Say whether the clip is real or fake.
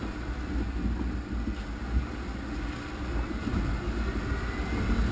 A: real